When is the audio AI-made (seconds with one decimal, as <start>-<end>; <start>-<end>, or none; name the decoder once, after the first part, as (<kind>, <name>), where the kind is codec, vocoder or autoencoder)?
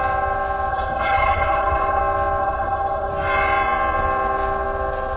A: 0.7-2.0 (codec, HILCodec); 2.4-3.1